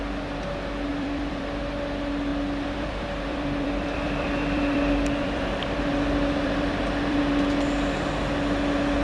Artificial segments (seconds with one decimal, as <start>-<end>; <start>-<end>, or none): 0.9-1.6; 2.3-7.2